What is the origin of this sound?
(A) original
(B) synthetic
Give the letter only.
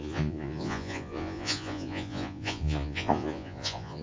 B